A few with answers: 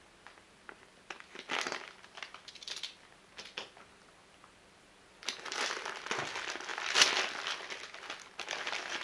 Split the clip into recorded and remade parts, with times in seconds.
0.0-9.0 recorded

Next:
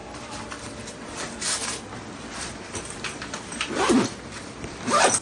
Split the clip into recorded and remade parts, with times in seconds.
0.0-5.2 remade

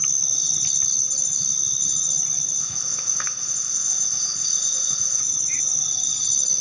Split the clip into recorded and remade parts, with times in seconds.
0.0-2.6 recorded; 2.6-5.2 remade; 5.2-6.6 recorded